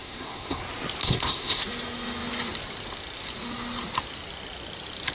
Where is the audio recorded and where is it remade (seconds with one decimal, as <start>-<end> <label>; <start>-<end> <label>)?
0.0-0.6 remade; 0.6-1.0 recorded; 1.0-1.6 remade; 1.6-5.1 recorded